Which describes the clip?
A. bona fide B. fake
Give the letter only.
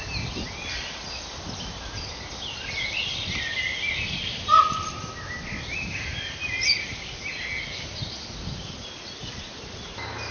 A